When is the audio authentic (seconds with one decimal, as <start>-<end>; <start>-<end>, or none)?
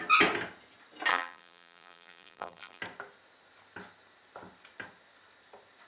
0.0-1.1; 2.8-5.9